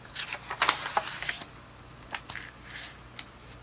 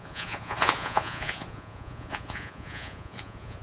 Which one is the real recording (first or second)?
first